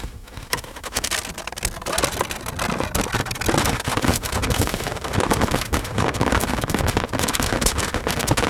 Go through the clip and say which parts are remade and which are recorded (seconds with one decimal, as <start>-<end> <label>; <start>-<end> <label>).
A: 0.0-1.1 remade; 1.1-3.6 recorded; 3.6-8.5 remade